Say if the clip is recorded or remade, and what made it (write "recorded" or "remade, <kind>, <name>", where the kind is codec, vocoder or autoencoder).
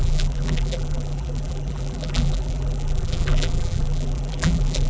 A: remade, vocoder, BigVGAN v2